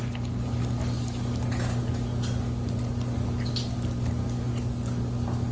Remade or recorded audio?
recorded